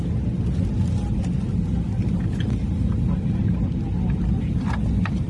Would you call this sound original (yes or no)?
yes